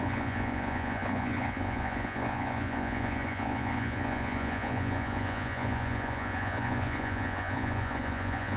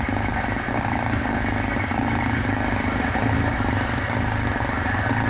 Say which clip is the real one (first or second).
second